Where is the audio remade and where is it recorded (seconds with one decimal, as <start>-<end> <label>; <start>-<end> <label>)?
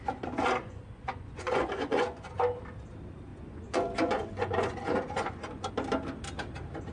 0.0-0.6 recorded; 0.6-2.3 remade; 2.3-3.3 recorded; 3.3-5.7 remade; 5.7-6.9 recorded